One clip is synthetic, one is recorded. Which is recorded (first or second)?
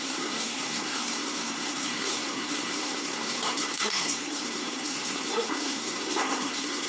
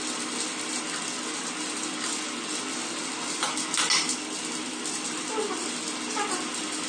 second